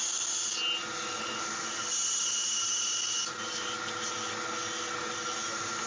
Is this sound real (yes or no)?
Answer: yes